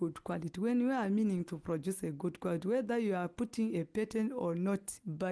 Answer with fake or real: real